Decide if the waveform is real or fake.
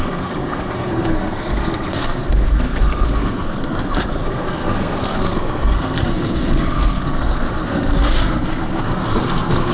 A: fake